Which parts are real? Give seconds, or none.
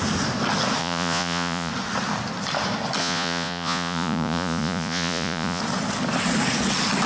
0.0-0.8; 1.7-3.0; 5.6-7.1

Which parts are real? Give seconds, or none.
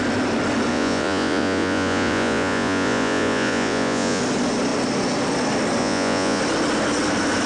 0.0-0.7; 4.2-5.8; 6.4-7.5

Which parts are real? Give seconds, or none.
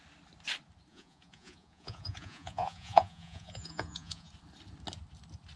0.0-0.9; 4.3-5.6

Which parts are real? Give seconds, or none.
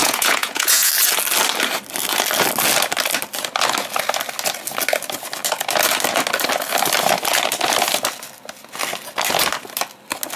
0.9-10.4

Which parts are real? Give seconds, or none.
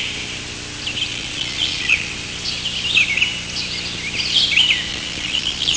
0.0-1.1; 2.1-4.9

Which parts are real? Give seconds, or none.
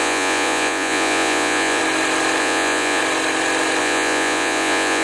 1.8-2.4; 3.0-3.8